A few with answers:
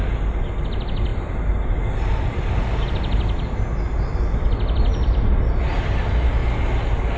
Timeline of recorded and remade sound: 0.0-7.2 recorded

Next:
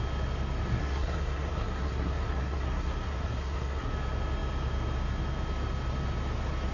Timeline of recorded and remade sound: 0.0-0.7 recorded; 0.7-3.9 remade; 3.9-6.7 recorded

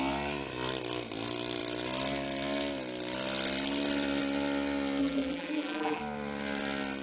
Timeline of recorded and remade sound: 0.0-5.0 recorded; 5.0-6.0 remade; 6.0-7.0 recorded

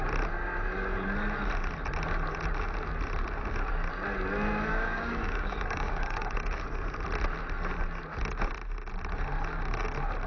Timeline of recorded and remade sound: 0.0-4.7 recorded; 4.7-6.7 remade; 6.7-10.3 recorded